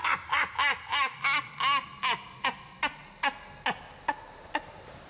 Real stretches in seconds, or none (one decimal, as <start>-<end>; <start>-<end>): 1.2-5.1